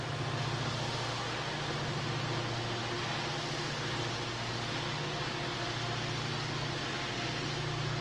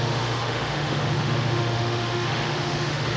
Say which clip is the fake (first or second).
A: second